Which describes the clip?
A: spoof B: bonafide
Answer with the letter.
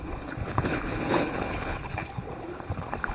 A